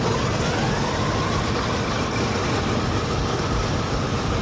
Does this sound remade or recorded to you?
recorded